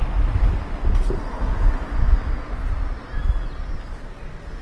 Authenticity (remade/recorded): recorded